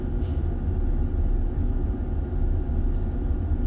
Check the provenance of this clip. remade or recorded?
recorded